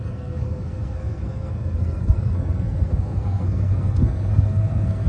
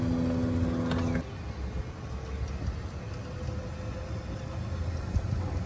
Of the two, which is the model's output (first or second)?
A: first